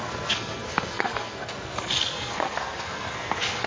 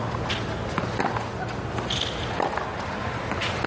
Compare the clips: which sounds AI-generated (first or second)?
first